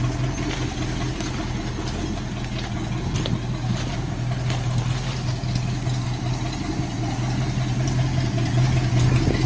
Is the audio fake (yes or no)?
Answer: no